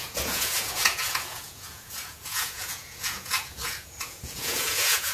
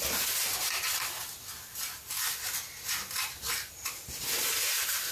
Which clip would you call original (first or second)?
second